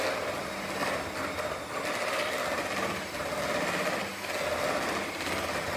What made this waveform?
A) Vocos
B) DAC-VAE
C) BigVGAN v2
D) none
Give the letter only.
D